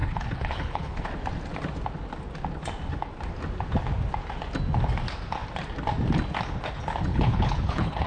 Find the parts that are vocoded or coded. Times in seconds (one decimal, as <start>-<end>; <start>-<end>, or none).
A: 0.0-1.1; 7.1-8.1